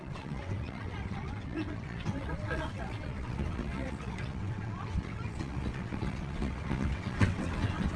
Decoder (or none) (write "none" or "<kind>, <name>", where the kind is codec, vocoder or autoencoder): vocoder, WaveNeXt